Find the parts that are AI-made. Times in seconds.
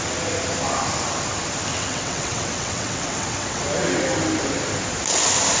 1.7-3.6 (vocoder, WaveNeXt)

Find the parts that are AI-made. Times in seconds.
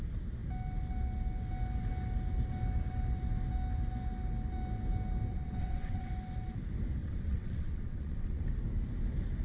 5.3-6.1 (vocoder, WaveNeXt); 7.0-8.4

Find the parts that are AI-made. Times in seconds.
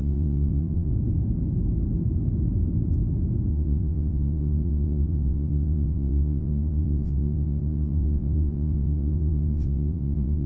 0.0-0.9 (vocoder, WaveNeXt); 3.5-10.5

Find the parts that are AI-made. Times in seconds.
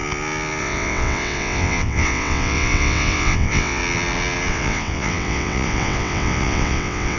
0.6-3.8 (vocoder, WaveNeXt); 4.5-7.2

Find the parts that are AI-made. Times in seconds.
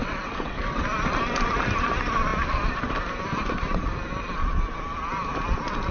0.0-0.8 (vocoder, WaveNeXt)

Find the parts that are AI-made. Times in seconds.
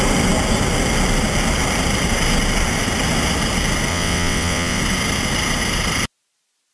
3.9-4.8 (vocoder, WaveNeXt)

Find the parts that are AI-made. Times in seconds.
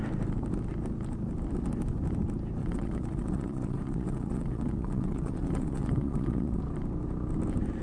2.6-6.6 (vocoder, WaveNeXt)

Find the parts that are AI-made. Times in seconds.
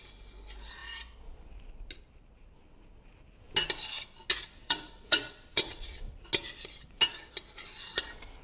4.6-6.3 (vocoder, WaveNeXt)